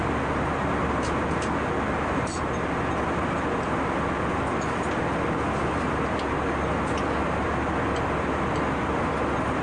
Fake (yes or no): no